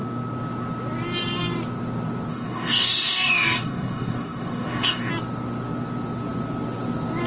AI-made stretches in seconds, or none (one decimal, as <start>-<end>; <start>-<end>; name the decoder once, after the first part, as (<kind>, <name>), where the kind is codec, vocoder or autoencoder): 2.3-5.1 (codec, DAC)